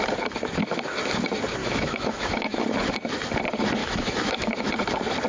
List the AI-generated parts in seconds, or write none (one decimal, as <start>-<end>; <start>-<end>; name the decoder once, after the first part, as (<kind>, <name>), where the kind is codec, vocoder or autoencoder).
1.6-2.6 (autoencoder, DAC-VAE); 3.8-4.7